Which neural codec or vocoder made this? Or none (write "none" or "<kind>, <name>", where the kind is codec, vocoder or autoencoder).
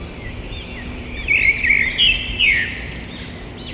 none